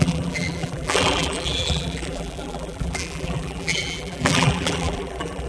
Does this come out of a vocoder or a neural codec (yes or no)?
yes